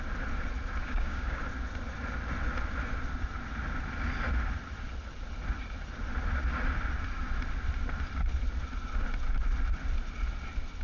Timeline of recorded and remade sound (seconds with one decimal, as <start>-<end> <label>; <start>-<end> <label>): 0.0-0.8 recorded; 0.8-1.4 remade; 1.4-10.8 recorded